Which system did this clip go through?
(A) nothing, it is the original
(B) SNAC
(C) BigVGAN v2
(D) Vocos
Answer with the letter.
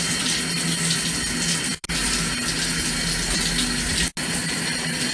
A